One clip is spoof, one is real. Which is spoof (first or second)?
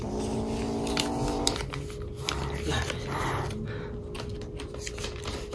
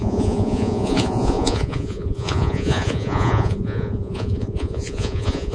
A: second